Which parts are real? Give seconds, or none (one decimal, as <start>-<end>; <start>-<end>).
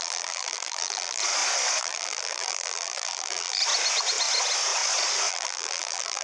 1.2-1.8; 3.6-5.3